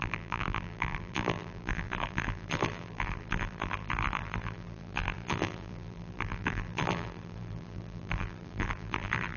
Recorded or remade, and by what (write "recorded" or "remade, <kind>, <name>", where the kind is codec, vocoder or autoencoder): remade, vocoder, BigVGAN v2